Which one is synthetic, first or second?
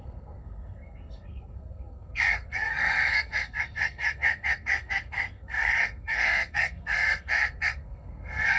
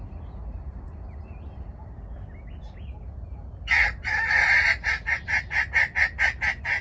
first